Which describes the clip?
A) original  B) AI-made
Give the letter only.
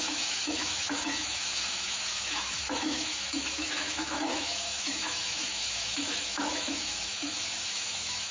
B